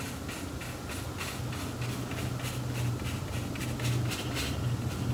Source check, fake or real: real